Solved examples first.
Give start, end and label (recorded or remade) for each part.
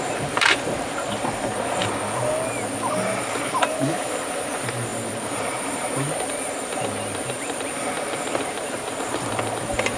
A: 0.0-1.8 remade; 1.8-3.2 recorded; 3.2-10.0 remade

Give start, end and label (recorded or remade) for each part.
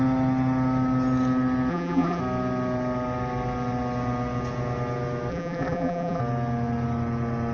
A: 0.0-1.7 recorded; 1.7-2.2 remade; 2.2-5.3 recorded; 5.3-6.2 remade; 6.2-7.5 recorded